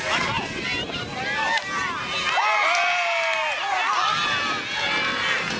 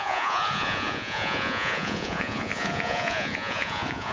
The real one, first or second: first